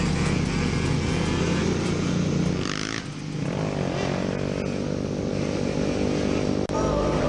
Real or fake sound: real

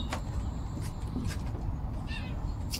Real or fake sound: real